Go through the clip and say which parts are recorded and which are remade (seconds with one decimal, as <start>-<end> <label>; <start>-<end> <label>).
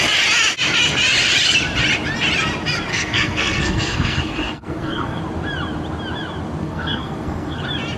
0.0-2.9 recorded; 2.9-5.2 remade; 5.2-6.6 recorded; 6.6-7.6 remade; 7.6-8.0 recorded